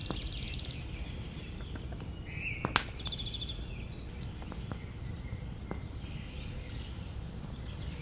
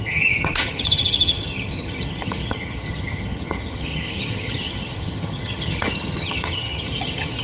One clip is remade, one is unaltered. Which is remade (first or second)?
second